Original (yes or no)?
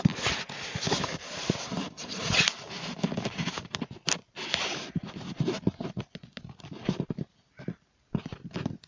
yes